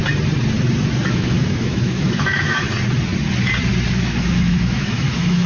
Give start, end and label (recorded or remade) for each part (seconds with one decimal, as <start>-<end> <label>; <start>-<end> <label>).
0.0-1.1 recorded; 1.1-2.7 remade; 2.7-3.9 recorded; 3.9-5.5 remade